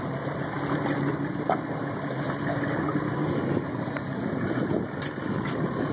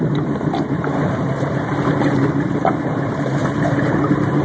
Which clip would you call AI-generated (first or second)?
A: second